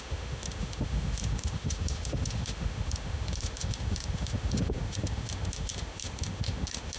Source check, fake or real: fake